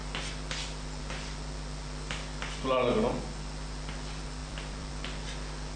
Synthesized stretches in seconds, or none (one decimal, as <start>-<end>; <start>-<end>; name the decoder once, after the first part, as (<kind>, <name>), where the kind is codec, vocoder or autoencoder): 4.4-4.9 (vocoder, BigVGAN v2)